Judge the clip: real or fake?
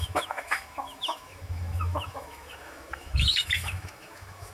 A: fake